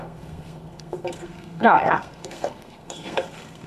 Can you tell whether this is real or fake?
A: fake